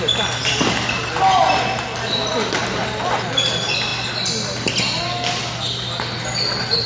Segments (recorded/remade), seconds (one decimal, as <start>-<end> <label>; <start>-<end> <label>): 0.0-6.9 recorded